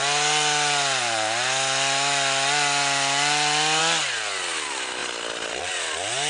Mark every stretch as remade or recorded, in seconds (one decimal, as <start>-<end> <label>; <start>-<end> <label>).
0.0-6.3 recorded